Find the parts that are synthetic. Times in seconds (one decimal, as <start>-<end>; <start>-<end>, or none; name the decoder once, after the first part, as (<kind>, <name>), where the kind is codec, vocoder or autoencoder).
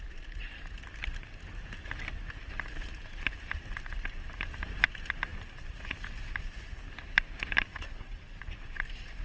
7.7-8.3 (vocoder, WaveNeXt)